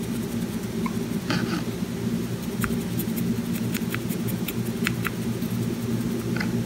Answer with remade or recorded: recorded